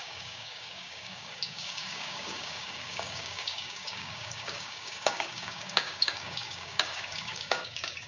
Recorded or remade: remade